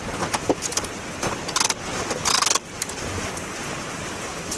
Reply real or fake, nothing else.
real